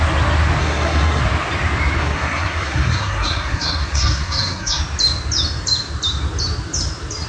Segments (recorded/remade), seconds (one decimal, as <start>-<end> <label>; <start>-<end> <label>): 0.0-0.6 recorded; 0.6-1.2 remade; 1.2-2.0 recorded; 2.0-4.8 remade; 4.8-7.3 recorded